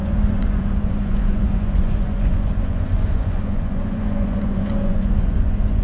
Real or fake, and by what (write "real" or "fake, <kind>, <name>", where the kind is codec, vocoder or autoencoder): fake, vocoder, Vocos